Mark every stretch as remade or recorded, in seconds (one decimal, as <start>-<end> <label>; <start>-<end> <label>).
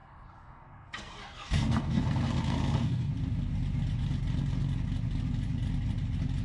0.0-3.1 remade; 3.1-6.4 recorded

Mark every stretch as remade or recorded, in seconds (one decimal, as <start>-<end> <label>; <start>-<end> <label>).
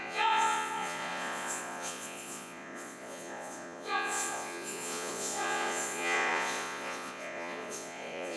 0.0-8.4 remade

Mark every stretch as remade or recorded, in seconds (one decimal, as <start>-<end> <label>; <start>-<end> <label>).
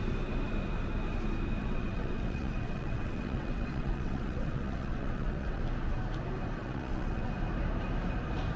0.0-1.6 recorded; 1.6-5.6 remade; 5.6-6.6 recorded; 6.6-7.3 remade; 7.3-8.6 recorded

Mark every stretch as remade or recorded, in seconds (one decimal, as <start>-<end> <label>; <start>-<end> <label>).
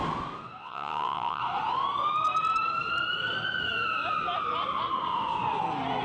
0.0-0.6 recorded; 0.6-1.4 remade; 1.4-6.0 recorded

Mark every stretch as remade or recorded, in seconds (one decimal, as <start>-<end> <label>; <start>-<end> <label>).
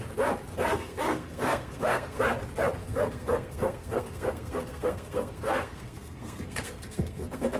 0.0-0.5 recorded; 0.5-2.2 remade; 2.2-2.8 recorded; 2.8-7.6 remade